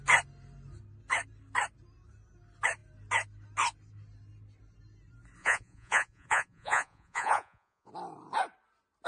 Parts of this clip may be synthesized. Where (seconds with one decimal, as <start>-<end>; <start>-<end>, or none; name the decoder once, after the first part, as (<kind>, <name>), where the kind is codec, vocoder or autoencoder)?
5.4-7.9 (vocoder, Vocos)

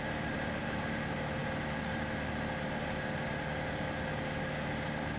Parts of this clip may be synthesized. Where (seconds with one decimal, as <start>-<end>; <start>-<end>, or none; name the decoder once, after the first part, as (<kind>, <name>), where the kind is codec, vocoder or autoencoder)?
none

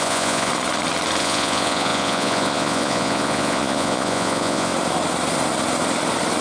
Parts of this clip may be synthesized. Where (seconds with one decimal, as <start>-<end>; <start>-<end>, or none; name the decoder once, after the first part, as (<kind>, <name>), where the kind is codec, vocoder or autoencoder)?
0.0-0.5 (vocoder, Vocos); 1.2-4.7

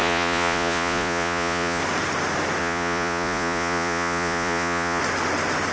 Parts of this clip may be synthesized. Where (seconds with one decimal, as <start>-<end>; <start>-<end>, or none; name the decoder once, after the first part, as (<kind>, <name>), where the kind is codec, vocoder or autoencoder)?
0.0-1.8 (vocoder, Vocos); 2.6-5.0

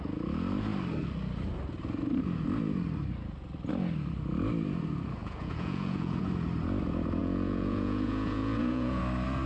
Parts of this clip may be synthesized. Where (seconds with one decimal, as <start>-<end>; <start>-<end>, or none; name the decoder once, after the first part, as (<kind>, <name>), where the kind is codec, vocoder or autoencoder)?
5.2-6.2 (vocoder, Vocos); 7.2-9.0